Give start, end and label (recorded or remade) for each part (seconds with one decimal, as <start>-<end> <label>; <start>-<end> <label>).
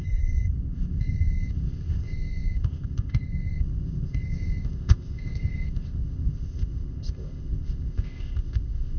0.0-9.0 remade